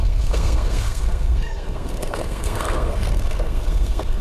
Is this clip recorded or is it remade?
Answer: remade